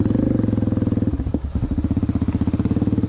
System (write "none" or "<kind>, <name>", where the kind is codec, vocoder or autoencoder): none